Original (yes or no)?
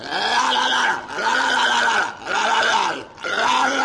yes